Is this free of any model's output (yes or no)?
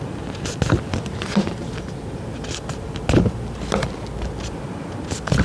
yes